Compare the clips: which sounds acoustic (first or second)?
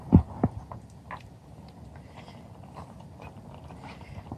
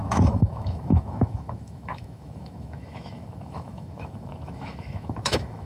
first